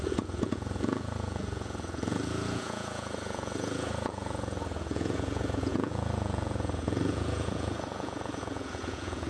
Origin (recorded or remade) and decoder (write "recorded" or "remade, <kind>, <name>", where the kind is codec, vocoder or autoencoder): remade, vocoder, Vocos